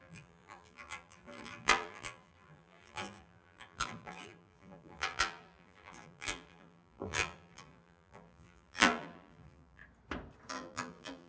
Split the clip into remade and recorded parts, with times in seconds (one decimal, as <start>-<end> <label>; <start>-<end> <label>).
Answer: 0.0-9.8 remade; 9.8-10.5 recorded; 10.5-11.3 remade